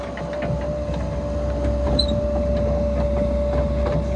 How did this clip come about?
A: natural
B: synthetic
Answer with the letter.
A